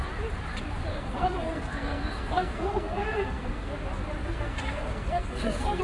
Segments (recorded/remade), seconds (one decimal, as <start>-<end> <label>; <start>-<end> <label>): 0.0-0.9 recorded; 0.9-3.7 remade; 3.7-4.2 recorded; 4.2-5.8 remade